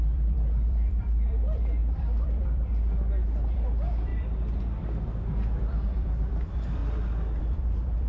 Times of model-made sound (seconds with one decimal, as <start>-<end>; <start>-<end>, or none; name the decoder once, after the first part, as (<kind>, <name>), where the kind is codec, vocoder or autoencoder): 0.0-6.8 (vocoder, BigVGAN v2); 7.4-8.1